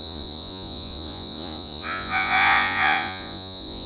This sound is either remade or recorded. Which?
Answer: remade